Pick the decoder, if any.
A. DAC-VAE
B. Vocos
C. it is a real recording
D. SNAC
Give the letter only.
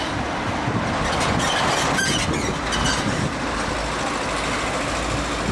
C